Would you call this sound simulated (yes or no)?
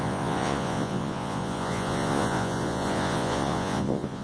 yes